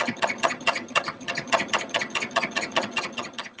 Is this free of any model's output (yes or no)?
no